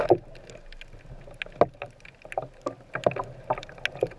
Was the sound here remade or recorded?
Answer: recorded